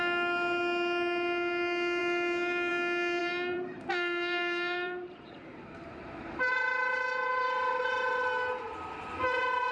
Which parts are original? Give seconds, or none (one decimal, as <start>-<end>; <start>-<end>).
0.0-3.2; 7.8-9.7